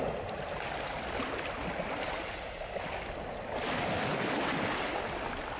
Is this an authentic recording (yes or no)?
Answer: yes